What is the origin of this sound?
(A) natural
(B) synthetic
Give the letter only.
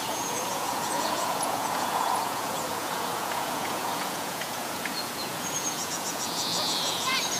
B